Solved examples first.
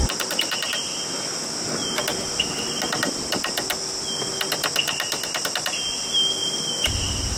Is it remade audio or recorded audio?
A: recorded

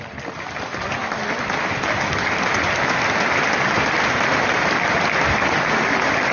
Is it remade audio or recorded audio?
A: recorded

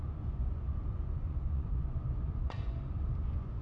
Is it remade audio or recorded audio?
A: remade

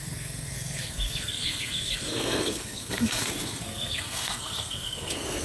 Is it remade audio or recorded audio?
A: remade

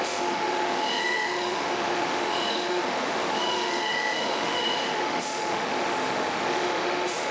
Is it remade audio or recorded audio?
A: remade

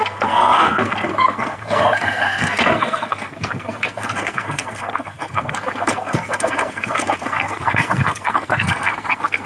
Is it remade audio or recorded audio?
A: remade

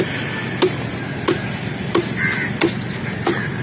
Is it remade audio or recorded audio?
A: recorded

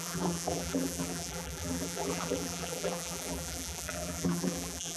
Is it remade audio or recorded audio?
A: remade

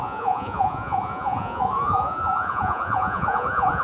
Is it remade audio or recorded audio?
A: remade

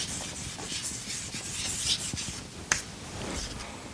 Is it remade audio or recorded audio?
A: remade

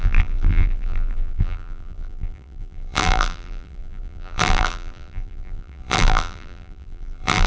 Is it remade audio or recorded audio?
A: remade